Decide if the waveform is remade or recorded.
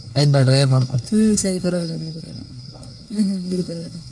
remade